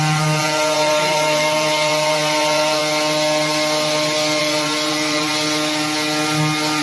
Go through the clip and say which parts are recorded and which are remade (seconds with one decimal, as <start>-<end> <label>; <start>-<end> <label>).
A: 0.0-2.8 remade; 2.8-4.4 recorded; 4.4-5.3 remade; 5.3-6.8 recorded